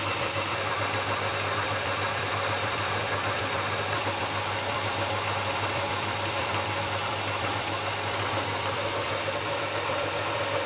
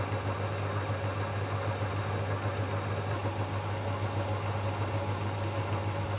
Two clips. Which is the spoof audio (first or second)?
first